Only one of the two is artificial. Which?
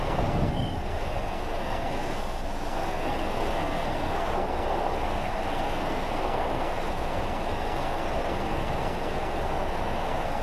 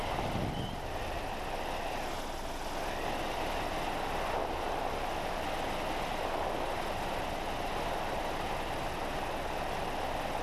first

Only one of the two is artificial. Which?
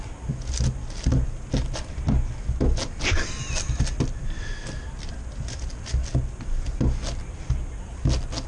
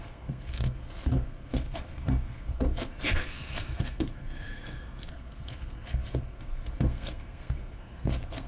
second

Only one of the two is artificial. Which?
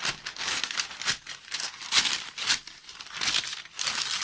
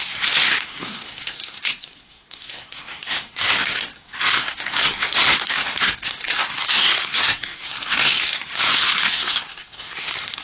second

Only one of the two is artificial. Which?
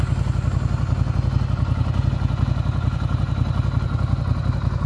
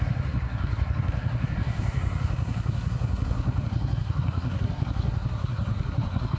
second